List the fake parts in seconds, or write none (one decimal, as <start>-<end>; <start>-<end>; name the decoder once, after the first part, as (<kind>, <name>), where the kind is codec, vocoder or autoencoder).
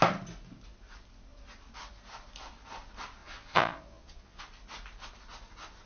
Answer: 3.2-4.4 (vocoder, Vocos)